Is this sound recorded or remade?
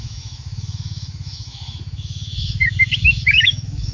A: remade